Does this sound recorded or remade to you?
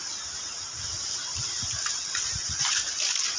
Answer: recorded